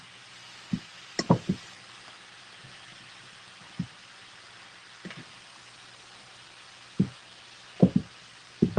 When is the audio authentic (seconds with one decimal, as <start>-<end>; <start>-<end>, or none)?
0.0-8.8